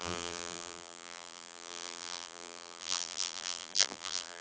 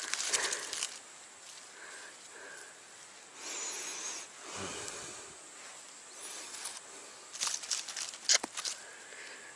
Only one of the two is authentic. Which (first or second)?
second